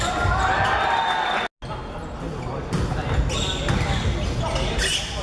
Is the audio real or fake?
real